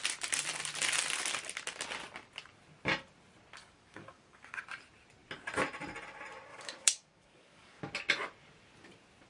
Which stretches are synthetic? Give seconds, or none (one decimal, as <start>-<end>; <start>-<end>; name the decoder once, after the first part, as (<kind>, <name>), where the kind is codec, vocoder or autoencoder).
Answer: 3.6-4.6 (codec, DAC); 6.5-7.8